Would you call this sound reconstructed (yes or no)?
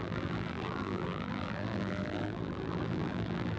yes